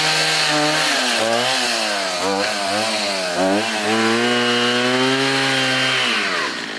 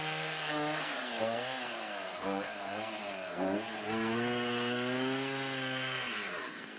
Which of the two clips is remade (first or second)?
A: second